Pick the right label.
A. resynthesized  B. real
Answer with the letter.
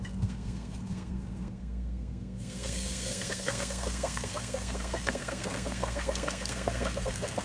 A